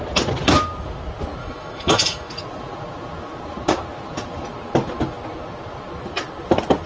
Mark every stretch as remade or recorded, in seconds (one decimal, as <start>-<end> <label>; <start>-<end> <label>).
0.0-1.4 recorded; 1.4-2.3 remade; 2.3-6.9 recorded